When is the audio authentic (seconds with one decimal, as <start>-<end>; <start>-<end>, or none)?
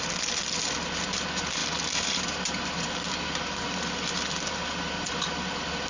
0.0-5.9